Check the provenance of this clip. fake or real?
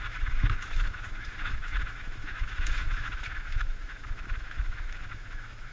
fake